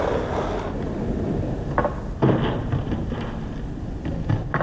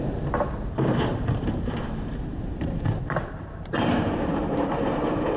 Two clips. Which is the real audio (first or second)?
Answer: first